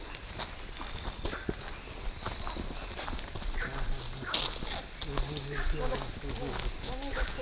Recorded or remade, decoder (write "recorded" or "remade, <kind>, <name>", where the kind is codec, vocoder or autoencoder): recorded